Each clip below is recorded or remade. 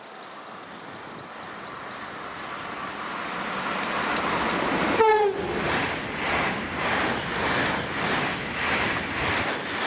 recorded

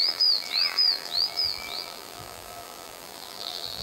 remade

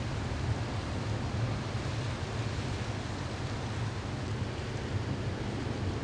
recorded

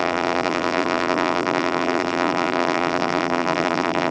remade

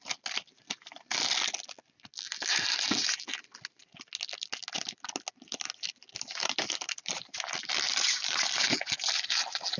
recorded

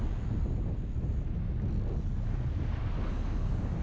recorded